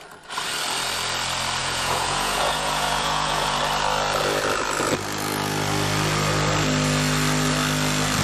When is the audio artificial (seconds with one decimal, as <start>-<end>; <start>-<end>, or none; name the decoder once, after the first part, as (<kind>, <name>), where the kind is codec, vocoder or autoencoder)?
1.6-3.6 (vocoder, Vocos)